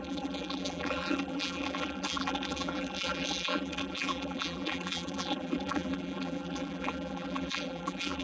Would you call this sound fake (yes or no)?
yes